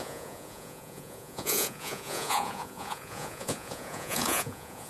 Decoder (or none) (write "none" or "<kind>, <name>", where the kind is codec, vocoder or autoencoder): vocoder, Vocos